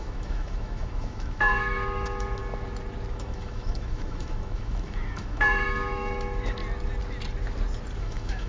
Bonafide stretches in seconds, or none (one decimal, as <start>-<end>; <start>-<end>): 2.4-3.1; 6.6-8.0